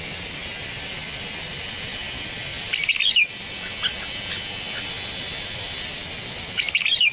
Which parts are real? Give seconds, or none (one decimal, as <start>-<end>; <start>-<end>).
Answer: 0.0-7.1